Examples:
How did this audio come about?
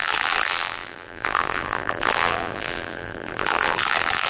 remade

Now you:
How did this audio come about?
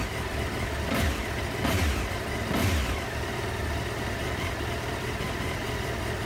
remade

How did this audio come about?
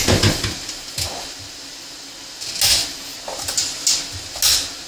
recorded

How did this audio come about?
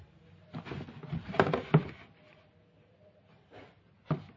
recorded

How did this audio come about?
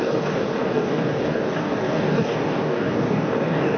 remade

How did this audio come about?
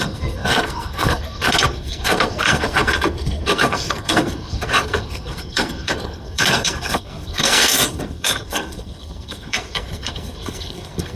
remade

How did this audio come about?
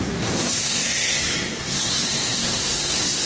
remade